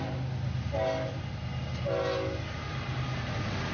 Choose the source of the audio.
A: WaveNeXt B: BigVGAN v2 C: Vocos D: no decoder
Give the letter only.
D